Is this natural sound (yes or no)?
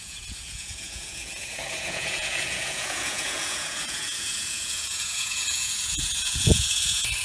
no